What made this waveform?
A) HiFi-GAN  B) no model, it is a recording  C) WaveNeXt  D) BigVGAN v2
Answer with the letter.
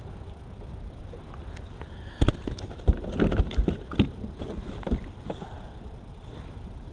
B